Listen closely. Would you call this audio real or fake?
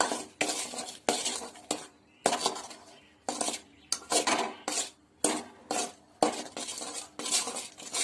real